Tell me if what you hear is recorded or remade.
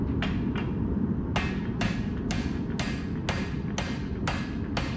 recorded